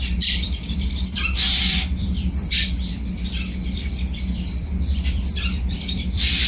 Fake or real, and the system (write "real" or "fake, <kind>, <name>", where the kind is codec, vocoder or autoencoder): fake, vocoder, BigVGAN v2